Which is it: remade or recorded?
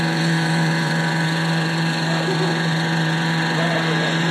remade